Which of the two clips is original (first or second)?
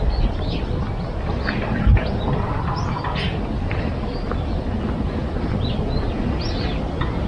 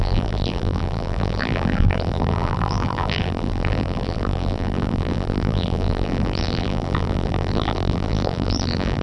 first